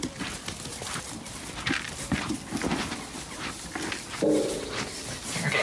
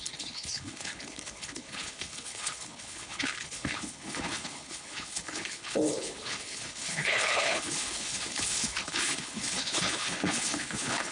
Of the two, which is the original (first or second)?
first